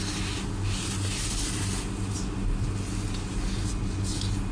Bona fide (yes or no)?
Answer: yes